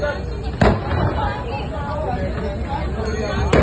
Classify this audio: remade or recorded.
recorded